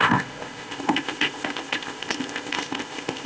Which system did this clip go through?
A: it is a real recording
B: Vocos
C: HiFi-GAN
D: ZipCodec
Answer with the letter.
D